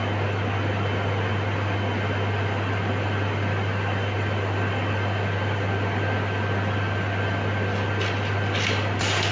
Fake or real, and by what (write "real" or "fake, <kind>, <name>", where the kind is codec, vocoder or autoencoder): real